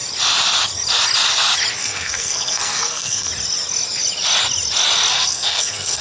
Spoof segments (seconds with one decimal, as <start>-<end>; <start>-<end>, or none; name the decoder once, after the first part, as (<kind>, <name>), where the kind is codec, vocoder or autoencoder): 1.8-3.3 (codec, SNAC); 5.1-6.0